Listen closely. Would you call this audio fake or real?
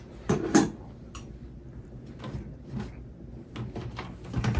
real